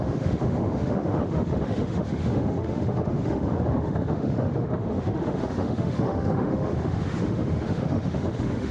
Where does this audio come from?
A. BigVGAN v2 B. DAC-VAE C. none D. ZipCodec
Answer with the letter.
B